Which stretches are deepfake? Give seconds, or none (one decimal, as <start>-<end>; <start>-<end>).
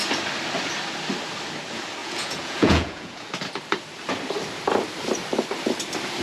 2.0-3.2